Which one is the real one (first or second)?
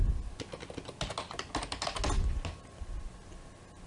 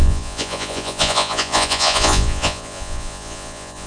first